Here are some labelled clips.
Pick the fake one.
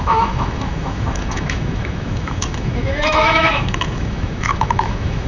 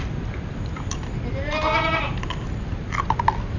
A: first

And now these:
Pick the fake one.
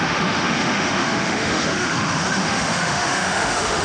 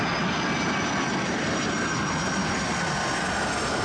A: first